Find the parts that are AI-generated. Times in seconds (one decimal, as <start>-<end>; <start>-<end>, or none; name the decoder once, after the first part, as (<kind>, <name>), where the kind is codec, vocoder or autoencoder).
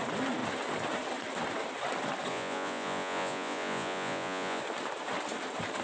2.3-4.6 (vocoder, Vocos)